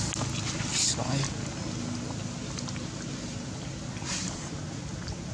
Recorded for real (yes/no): yes